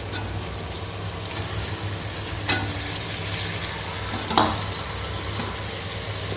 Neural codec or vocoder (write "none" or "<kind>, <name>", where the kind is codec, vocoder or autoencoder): none